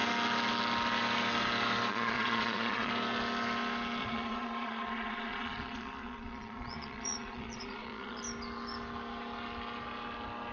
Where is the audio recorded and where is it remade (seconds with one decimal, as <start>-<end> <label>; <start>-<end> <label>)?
0.0-1.9 recorded; 1.9-2.9 remade; 2.9-4.0 recorded; 4.0-8.2 remade; 8.2-10.5 recorded